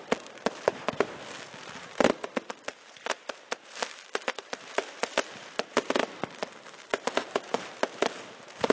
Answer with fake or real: real